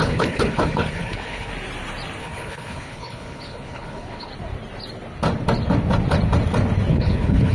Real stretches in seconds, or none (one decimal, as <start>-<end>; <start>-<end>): 1.5-2.2; 4.3-6.9